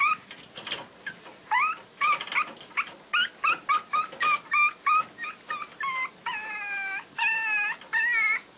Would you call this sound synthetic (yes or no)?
no